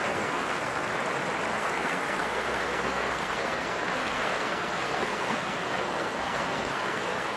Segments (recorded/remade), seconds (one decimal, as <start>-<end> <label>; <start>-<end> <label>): 0.0-0.9 remade; 0.9-1.5 recorded; 1.5-7.4 remade